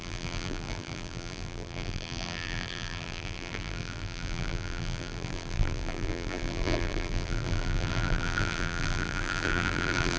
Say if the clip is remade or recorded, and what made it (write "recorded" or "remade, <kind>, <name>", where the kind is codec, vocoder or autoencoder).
remade, vocoder, BigVGAN v2